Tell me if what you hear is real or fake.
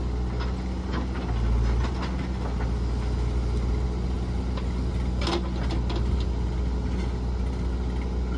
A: real